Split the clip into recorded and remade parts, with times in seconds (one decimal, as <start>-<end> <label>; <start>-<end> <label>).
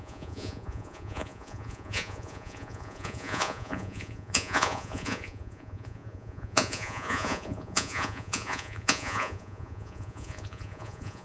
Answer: 0.0-11.2 remade